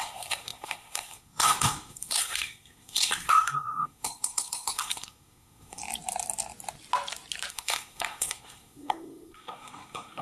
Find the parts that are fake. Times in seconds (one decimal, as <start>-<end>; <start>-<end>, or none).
0.0-5.8; 7.5-10.2